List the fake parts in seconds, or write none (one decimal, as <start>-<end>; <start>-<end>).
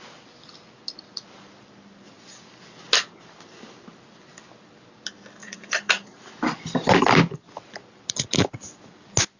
5.4-6.3